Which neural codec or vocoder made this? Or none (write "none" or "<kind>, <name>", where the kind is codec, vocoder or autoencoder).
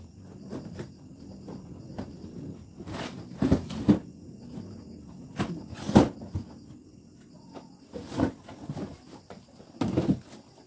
none